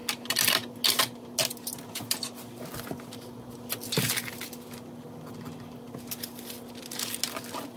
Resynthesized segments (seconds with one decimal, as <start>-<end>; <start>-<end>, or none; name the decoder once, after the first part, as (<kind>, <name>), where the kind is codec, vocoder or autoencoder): none